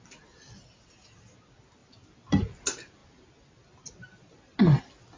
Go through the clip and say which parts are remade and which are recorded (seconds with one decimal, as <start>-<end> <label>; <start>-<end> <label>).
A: 0.0-5.2 recorded